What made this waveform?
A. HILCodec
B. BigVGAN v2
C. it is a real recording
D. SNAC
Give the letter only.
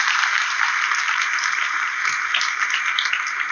B